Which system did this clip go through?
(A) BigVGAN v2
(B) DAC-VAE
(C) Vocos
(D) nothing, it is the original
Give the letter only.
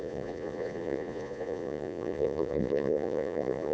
C